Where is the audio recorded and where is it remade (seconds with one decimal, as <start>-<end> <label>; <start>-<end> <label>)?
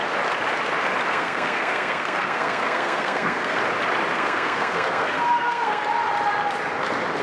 0.0-1.1 recorded; 1.1-3.6 remade; 3.6-4.1 recorded; 4.1-5.8 remade; 5.8-7.2 recorded